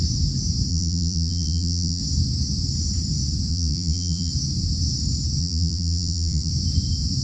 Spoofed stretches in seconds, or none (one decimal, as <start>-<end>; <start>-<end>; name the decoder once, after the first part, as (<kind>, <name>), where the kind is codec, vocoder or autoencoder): 0.7-2.0 (vocoder, Vocos); 3.5-4.3; 5.4-6.5